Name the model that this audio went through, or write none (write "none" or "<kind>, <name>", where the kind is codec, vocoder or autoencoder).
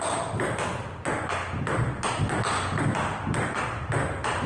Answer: none